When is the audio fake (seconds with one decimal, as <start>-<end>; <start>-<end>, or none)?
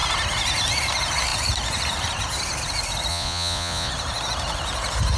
3.1-3.9